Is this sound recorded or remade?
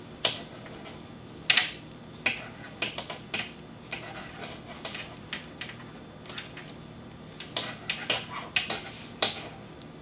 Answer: recorded